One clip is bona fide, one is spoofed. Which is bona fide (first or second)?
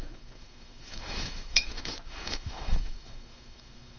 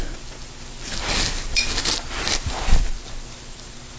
second